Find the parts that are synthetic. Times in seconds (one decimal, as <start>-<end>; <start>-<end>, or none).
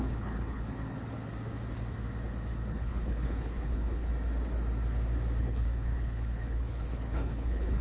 0.0-0.8; 2.7-4.1; 5.4-7.8